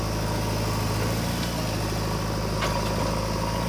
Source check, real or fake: real